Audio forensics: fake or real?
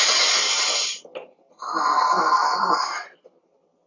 real